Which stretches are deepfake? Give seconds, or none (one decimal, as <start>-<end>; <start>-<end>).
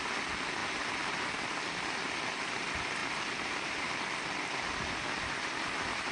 0.6-1.3; 3.0-3.9